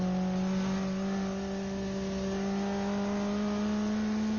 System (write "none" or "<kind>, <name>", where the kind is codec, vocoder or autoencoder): none